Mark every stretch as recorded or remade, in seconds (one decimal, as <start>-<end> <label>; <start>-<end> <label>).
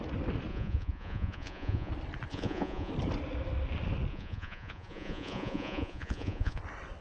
0.0-0.5 recorded; 0.5-1.9 remade; 1.9-2.3 recorded; 2.3-2.9 remade; 2.9-4.1 recorded; 4.1-6.6 remade; 6.6-7.0 recorded